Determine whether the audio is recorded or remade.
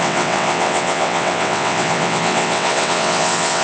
remade